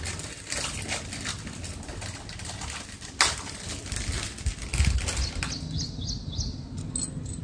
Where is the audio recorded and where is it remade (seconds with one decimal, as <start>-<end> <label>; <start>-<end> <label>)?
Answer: 0.0-7.4 recorded